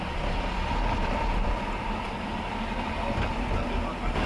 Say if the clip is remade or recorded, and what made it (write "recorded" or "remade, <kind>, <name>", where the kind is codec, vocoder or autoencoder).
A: recorded